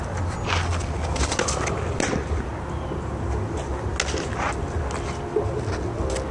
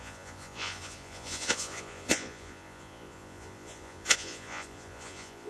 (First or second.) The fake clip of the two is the second